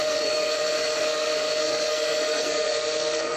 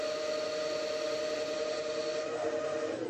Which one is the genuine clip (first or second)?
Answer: second